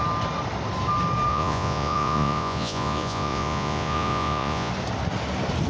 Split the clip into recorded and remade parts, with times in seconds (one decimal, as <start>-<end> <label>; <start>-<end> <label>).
0.0-1.3 recorded; 1.3-4.7 remade; 4.7-5.7 recorded